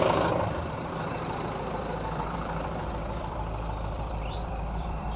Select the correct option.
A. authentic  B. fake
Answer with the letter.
B